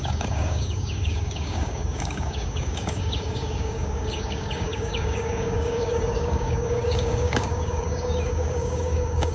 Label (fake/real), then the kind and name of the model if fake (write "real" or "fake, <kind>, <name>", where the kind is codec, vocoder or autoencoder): fake, codec, DAC